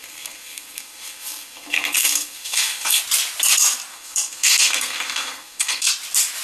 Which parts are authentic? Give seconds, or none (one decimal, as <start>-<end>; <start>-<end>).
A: 3.0-3.9; 5.9-6.4